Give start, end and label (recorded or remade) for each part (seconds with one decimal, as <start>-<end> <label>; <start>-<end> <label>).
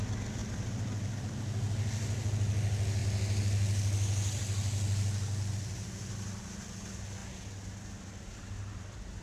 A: 0.0-9.2 recorded